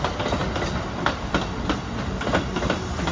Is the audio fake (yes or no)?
no